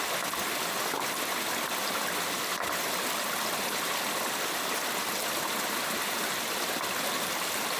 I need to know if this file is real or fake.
real